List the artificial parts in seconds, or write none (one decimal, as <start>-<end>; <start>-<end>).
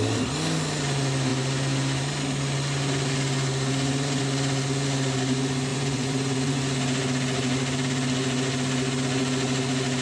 5.7-6.6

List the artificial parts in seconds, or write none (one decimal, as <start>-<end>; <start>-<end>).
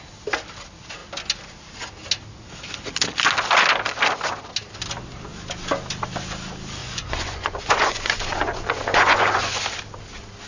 6.8-9.6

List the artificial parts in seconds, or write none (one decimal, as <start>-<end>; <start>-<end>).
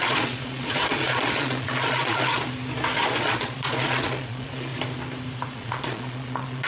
0.0-2.3; 3.2-4.7; 5.5-6.7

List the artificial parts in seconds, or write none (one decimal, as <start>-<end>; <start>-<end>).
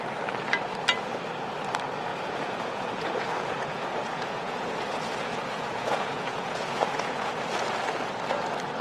2.1-7.3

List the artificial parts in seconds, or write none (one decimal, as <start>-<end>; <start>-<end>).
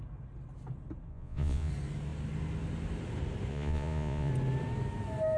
1.1-1.7; 3.5-4.3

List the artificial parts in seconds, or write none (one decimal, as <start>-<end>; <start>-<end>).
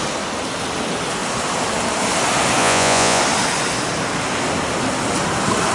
2.6-3.2